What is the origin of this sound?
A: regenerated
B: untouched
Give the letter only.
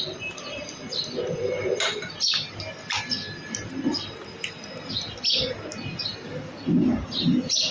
B